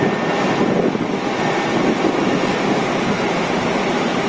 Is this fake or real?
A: real